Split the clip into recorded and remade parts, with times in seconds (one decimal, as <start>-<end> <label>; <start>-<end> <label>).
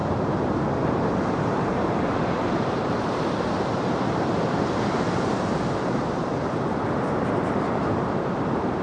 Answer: 0.0-6.2 remade; 6.2-7.6 recorded; 7.6-8.8 remade